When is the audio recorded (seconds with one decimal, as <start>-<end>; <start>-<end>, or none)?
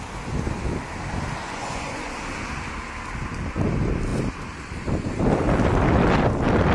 0.0-1.4; 2.2-6.7